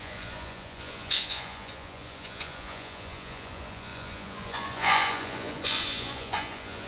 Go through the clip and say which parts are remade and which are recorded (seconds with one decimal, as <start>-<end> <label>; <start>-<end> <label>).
0.0-6.9 remade